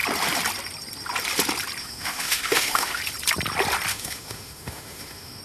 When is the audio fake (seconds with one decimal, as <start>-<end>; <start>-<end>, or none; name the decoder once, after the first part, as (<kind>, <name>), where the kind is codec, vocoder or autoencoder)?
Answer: 1.8-3.0 (autoencoder, DAC-VAE); 3.9-5.4

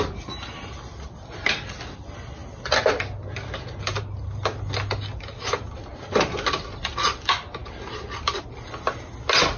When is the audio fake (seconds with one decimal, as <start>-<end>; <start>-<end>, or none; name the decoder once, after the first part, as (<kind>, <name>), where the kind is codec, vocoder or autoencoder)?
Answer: none